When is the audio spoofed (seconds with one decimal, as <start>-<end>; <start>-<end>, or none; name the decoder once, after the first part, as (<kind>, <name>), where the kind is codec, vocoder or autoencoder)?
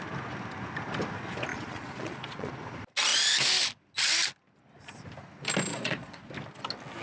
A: 1.5-2.5 (vocoder, Vocos); 5.7-6.3